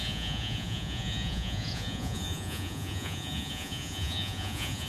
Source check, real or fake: fake